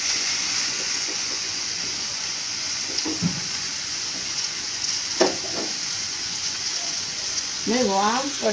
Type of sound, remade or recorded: remade